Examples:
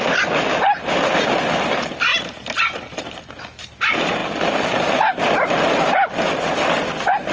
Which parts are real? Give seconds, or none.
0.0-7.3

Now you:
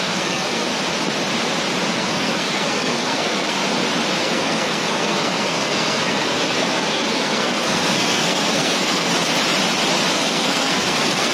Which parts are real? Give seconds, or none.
0.7-1.9; 3.6-4.2; 9.1-10.1

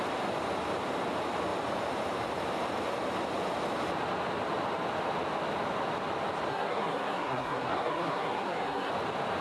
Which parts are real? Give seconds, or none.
0.0-6.5; 8.9-9.4

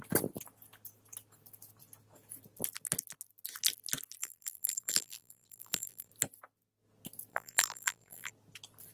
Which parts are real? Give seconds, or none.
0.0-4.2; 6.1-7.3; 8.3-8.9